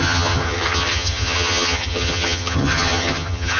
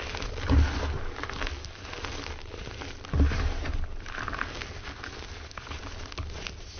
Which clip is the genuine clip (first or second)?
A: second